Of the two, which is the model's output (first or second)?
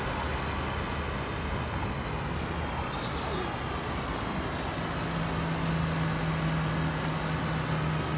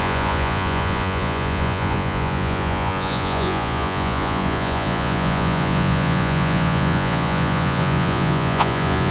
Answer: second